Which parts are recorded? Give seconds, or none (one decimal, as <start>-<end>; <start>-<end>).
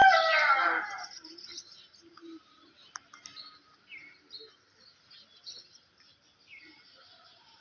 0.0-7.6